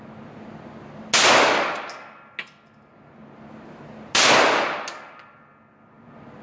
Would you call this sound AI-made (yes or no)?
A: no